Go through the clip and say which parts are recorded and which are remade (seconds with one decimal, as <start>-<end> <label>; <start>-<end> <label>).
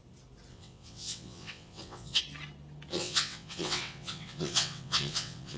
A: 0.0-0.5 recorded; 0.5-2.2 remade; 2.2-2.9 recorded; 2.9-5.6 remade